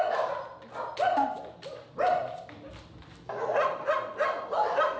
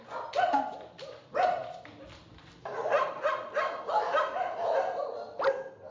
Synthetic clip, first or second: second